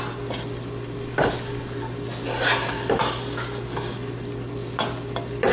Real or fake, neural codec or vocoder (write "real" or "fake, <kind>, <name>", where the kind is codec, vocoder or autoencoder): real